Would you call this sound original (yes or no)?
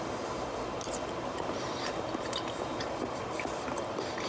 no